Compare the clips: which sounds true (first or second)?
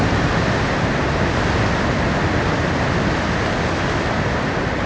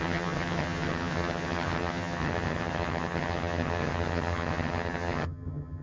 first